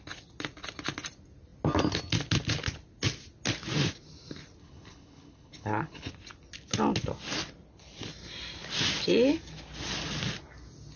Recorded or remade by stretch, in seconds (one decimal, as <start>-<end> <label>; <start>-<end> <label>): 0.0-4.6 recorded; 4.6-6.1 remade; 6.1-11.0 recorded